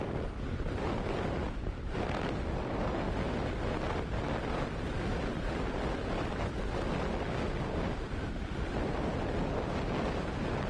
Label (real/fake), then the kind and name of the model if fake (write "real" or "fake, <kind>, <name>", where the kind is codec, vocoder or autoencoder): real